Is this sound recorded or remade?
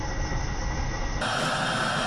recorded